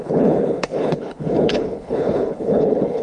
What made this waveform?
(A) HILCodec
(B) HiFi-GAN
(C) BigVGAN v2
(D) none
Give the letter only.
A